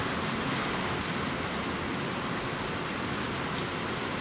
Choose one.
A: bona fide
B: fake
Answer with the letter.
A